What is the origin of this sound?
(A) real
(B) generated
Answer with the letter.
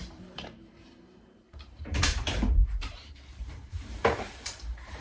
B